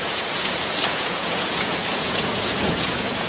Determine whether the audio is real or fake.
fake